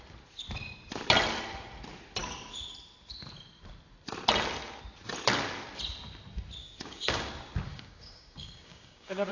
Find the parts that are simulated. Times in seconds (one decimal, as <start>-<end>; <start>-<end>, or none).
6.6-7.3; 7.7-9.3